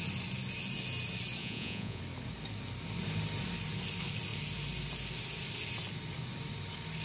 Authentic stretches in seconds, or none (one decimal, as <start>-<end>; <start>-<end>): 0.0-1.4; 2.0-7.0